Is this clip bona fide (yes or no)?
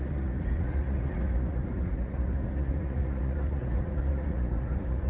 no